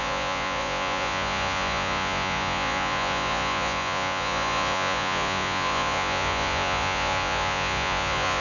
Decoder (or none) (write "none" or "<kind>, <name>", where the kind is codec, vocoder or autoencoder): vocoder, Vocos